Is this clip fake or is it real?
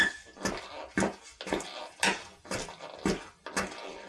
real